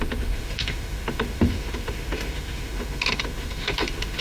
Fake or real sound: fake